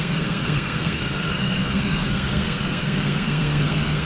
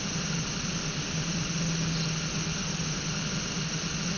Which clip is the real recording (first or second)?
second